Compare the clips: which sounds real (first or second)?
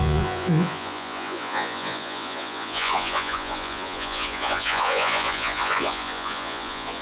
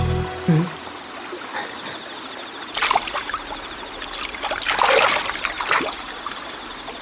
second